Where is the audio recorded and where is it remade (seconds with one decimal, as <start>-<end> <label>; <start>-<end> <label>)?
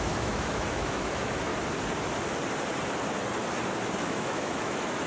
0.0-1.5 remade; 1.5-4.0 recorded; 4.0-5.1 remade